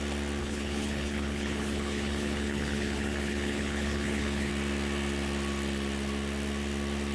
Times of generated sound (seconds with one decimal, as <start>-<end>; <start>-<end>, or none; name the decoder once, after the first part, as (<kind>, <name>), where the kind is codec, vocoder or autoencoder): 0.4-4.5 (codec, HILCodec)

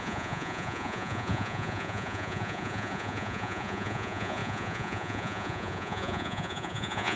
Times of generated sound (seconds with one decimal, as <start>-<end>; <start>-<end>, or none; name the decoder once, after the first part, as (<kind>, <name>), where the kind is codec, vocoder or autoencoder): 0.0-7.2 (vocoder, Vocos)

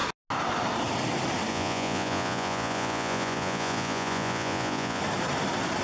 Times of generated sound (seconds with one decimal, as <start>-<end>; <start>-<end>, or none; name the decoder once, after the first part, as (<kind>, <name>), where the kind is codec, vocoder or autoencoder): 1.5-5.0 (vocoder, Vocos)

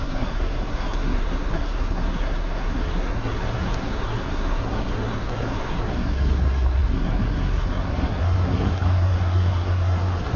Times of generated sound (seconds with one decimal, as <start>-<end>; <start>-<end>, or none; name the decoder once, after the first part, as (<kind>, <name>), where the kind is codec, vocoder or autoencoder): 0.0-10.4 (codec, SNAC)

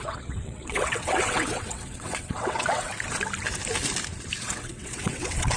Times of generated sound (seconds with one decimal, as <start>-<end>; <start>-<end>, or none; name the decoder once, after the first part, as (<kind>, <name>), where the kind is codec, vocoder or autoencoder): 0.0-2.9 (vocoder, WaveNeXt); 4.4-5.6